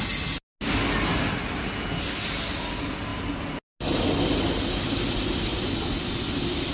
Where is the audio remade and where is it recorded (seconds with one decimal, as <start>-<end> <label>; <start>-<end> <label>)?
0.0-5.5 recorded; 5.5-6.7 remade